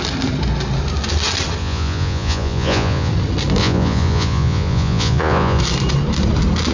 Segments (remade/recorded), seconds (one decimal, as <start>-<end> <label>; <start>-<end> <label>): 0.0-1.6 recorded; 1.6-3.1 remade; 3.1-3.6 recorded; 3.6-5.6 remade; 5.6-6.7 recorded